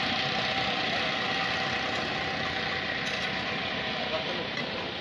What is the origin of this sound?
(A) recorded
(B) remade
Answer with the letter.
A